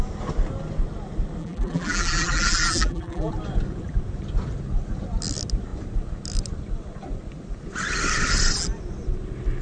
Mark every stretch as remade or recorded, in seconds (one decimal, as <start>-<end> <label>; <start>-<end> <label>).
0.0-1.4 recorded; 1.4-3.3 remade; 3.3-9.6 recorded